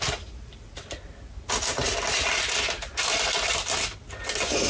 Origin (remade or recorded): recorded